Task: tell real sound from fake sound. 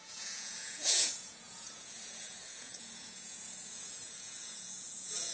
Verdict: fake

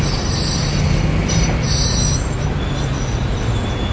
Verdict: real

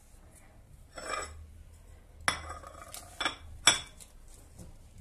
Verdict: real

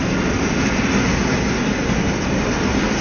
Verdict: real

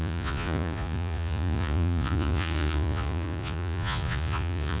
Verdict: fake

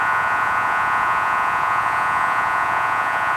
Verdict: fake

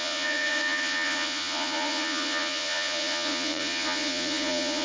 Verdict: fake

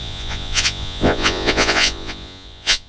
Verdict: fake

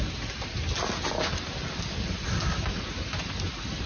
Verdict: real